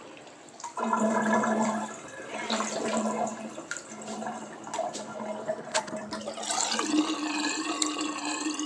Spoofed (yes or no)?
no